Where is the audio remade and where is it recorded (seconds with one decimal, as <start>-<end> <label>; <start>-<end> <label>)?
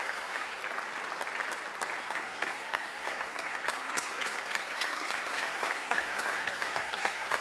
0.0-0.6 remade; 0.6-2.0 recorded; 2.0-7.4 remade